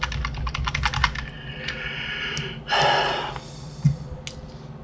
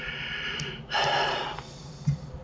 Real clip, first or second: first